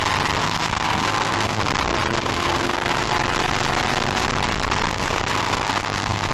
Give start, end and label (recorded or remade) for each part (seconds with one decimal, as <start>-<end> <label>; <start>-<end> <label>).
0.0-0.4 recorded; 0.4-1.6 remade; 1.6-2.2 recorded; 2.2-3.1 remade; 3.1-4.9 recorded; 4.9-6.3 remade